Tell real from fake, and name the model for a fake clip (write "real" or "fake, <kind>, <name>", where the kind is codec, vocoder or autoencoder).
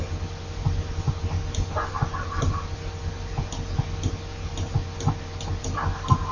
real